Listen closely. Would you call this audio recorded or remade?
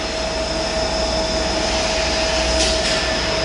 recorded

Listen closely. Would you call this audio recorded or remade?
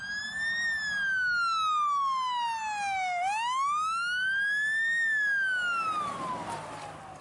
recorded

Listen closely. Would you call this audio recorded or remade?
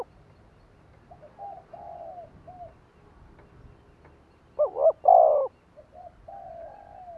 recorded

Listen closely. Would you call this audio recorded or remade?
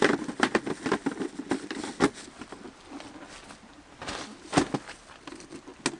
recorded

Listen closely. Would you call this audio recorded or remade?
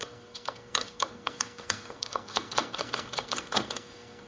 remade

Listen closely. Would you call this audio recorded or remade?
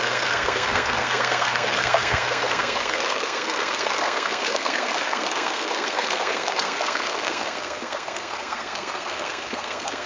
remade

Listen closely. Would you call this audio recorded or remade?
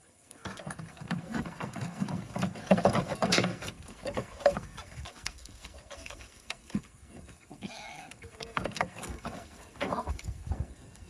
remade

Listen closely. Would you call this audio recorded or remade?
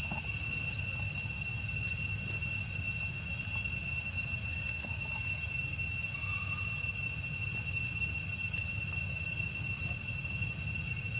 recorded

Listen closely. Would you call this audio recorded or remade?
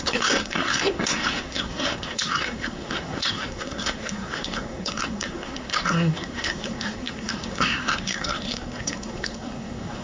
remade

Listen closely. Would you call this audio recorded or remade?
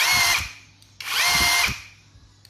recorded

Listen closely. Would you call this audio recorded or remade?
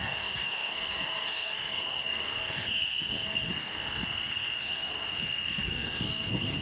remade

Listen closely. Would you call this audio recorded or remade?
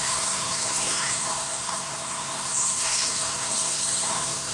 remade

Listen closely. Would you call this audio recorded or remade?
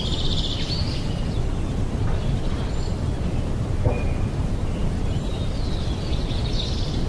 recorded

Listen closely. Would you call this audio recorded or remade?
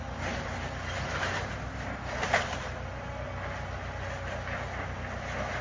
recorded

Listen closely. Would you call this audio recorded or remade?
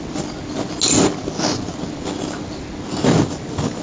recorded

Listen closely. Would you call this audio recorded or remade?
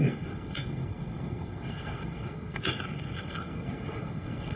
remade